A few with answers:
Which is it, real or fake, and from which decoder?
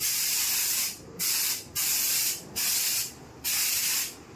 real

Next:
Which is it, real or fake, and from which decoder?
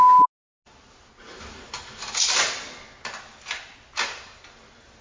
real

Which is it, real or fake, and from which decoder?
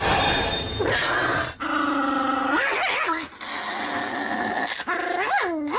real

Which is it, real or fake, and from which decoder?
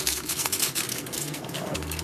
fake, codec, SNAC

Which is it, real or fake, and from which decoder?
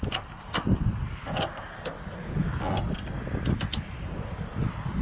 real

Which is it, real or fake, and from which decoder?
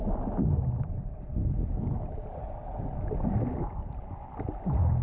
real